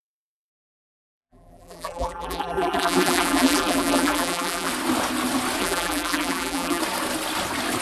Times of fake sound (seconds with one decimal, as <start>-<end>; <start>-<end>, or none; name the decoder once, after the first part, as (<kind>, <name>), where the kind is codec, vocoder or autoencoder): 0.5-4.7 (vocoder, BigVGAN v2); 5.6-6.8